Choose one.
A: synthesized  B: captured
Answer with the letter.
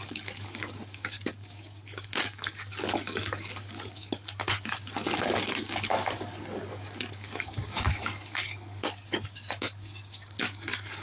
A